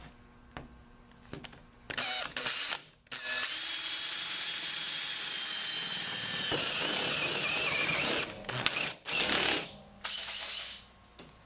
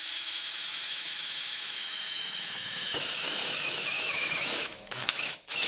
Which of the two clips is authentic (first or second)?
first